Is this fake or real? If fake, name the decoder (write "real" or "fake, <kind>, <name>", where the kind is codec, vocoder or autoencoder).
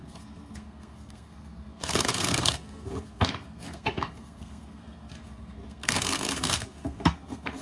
fake, codec, SNAC